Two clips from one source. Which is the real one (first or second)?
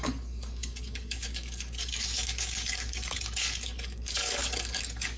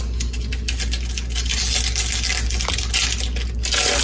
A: second